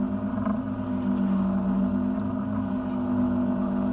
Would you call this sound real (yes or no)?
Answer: yes